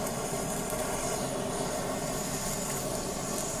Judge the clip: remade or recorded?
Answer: recorded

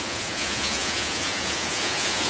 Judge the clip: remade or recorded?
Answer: remade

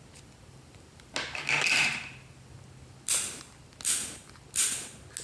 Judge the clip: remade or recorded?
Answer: recorded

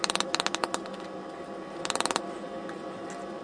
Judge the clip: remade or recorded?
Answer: recorded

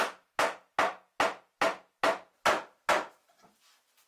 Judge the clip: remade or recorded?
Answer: recorded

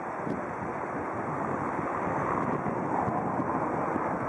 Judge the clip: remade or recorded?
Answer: recorded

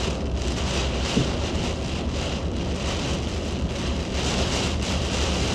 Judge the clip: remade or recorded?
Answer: recorded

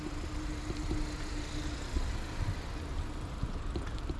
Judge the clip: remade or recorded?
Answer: recorded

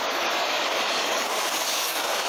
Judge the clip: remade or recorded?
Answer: remade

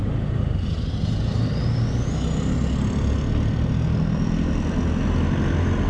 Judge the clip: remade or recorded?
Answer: recorded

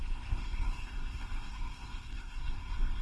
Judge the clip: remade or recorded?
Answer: remade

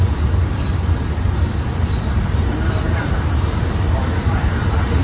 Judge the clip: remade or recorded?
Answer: remade